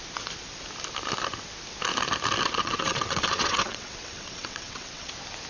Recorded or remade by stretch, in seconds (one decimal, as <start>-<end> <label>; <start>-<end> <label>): 0.0-2.6 recorded; 2.6-5.1 remade; 5.1-5.5 recorded